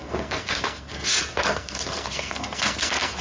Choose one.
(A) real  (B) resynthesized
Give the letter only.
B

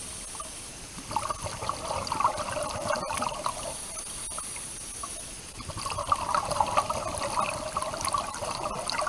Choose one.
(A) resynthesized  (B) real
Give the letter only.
B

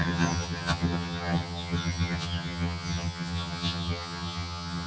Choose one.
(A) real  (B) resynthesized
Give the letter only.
B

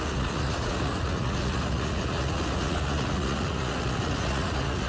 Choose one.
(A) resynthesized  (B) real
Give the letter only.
A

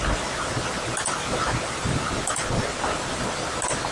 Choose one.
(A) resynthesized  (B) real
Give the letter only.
B